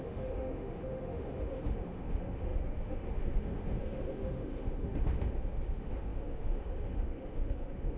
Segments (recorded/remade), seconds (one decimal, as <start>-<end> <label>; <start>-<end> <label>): 0.0-8.0 remade